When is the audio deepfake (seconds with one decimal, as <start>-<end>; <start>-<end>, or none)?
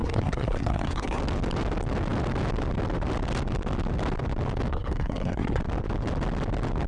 0.0-1.2; 4.7-5.6